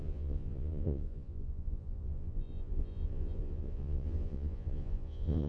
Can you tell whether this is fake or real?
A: fake